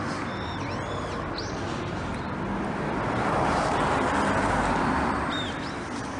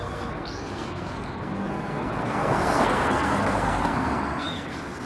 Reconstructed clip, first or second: second